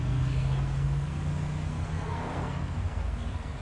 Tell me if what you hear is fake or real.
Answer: fake